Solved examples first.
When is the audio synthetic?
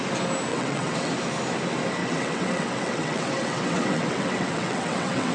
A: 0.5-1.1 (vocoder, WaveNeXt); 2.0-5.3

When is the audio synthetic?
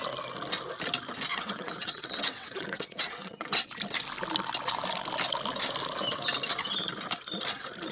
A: 1.3-3.7 (vocoder, WaveNeXt)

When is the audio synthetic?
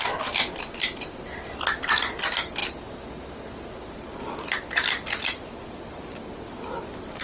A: none